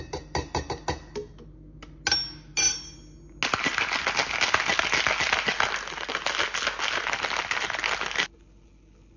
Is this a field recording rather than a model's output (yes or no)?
yes